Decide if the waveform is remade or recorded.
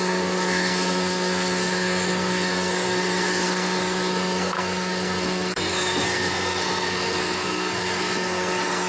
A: remade